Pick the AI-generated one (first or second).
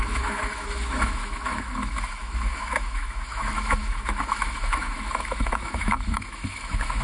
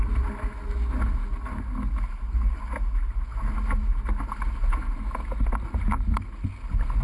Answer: first